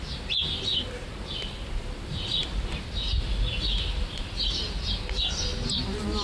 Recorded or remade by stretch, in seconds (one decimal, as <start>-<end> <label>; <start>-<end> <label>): 0.0-6.2 recorded